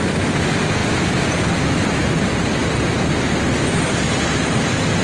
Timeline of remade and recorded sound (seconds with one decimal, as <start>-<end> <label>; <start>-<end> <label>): 0.0-5.0 recorded